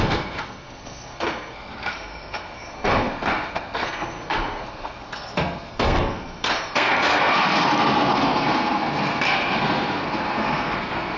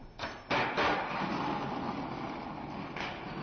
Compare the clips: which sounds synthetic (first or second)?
first